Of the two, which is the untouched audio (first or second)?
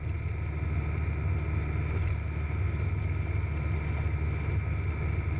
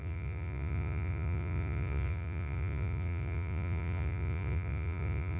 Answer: first